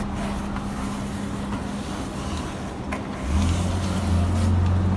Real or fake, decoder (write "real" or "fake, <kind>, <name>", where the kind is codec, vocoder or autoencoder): real